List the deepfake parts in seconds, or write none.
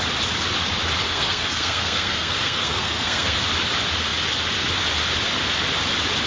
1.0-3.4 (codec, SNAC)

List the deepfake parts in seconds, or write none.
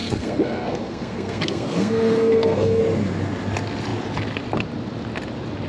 0.0-2.8 (codec, SNAC)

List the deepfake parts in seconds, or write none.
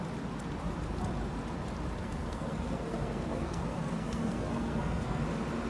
2.0-5.2 (codec, SNAC)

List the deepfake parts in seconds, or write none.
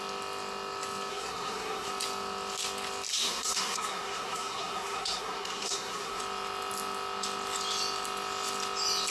1.1-1.9 (codec, SNAC); 3.1-6.2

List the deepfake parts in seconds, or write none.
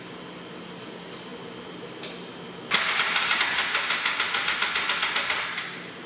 none